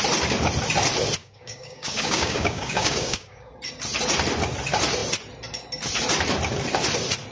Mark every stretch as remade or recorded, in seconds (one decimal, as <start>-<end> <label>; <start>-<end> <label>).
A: 0.0-1.2 recorded; 1.2-3.5 remade; 3.5-7.3 recorded